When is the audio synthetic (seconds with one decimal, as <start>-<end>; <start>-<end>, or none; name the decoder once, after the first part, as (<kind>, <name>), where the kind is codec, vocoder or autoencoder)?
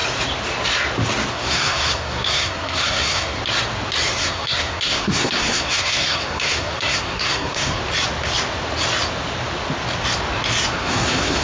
1.3-3.4 (codec, SNAC); 4.2-7.8; 10.7-11.4